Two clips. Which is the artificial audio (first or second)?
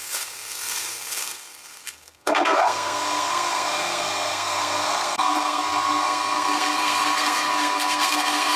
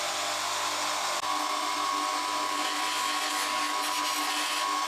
first